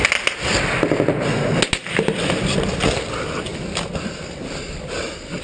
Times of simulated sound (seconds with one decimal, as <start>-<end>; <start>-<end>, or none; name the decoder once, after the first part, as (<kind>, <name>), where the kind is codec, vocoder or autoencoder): none